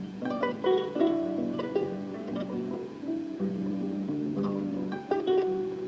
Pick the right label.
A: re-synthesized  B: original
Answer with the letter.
A